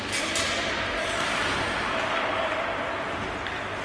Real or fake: real